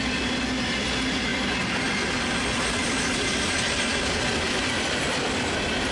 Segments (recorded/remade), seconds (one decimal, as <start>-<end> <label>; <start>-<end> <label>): 0.0-1.3 remade; 1.3-2.2 recorded; 2.2-5.9 remade